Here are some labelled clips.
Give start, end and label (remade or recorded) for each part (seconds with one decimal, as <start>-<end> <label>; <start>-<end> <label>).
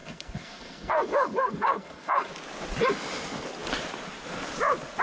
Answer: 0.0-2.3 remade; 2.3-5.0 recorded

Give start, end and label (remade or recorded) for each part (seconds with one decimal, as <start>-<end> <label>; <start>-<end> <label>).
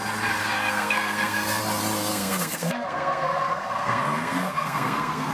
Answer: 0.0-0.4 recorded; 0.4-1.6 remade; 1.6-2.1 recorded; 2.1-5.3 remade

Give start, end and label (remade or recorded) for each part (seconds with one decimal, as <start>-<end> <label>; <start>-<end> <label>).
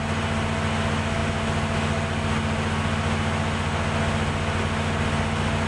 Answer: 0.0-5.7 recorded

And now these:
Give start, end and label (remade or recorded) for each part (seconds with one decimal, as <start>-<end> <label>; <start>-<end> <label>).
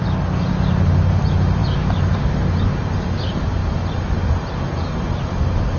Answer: 0.0-5.8 recorded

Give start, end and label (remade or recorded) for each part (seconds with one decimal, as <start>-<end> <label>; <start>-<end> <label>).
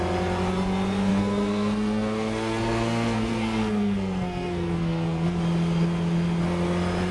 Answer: 0.0-1.1 recorded; 1.1-5.4 remade; 5.4-7.1 recorded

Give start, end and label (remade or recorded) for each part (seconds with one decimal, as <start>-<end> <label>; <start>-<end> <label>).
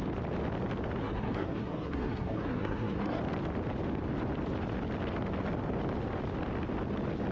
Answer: 0.0-1.0 recorded; 1.0-3.2 remade; 3.2-7.3 recorded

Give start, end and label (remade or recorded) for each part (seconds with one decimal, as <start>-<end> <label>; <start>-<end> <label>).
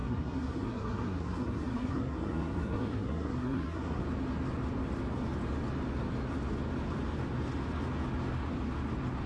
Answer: 0.0-4.0 remade; 4.0-9.3 recorded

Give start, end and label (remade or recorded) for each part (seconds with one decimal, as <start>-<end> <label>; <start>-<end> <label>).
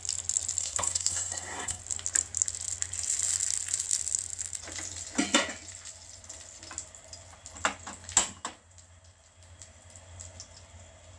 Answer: 0.0-0.6 recorded; 0.6-1.8 remade; 1.8-11.2 recorded